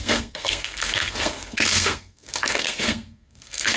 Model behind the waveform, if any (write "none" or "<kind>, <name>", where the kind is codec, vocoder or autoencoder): codec, SNAC